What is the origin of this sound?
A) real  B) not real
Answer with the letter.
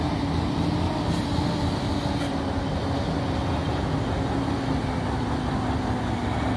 A